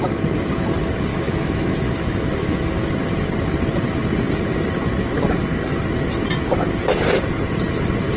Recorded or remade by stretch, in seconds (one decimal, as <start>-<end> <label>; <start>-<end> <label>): 0.0-1.1 recorded; 1.1-2.9 remade; 2.9-8.2 recorded